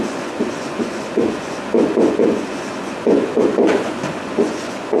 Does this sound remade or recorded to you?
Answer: remade